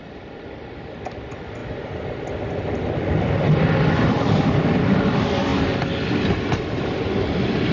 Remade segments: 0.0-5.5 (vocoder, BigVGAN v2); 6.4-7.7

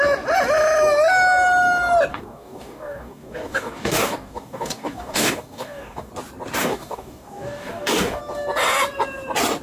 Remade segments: 2.1-6.1 (codec, DAC); 6.6-8.2

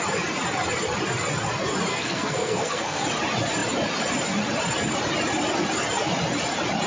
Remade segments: 1.9-3.0 (codec, SNAC)

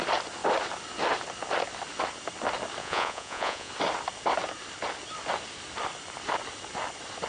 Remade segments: 2.8-3.7 (vocoder, Vocos)

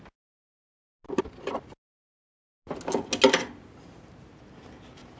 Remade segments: none

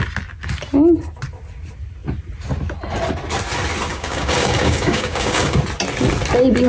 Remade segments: 3.9-5.6 (codec, DAC)